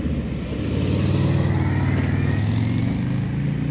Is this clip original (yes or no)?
yes